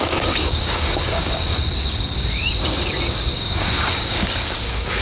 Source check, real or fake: fake